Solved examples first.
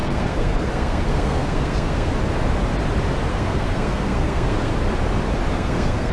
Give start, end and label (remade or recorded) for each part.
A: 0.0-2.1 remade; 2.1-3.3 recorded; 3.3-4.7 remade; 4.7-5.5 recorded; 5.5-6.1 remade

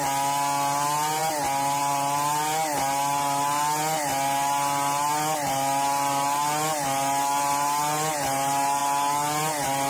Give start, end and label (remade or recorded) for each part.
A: 0.0-9.9 recorded

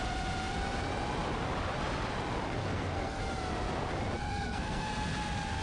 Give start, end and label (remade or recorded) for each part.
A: 0.0-2.6 recorded; 2.6-3.2 remade; 3.2-4.2 recorded; 4.2-4.9 remade; 4.9-5.6 recorded

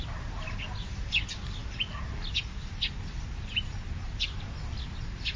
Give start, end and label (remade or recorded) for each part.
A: 0.0-5.4 recorded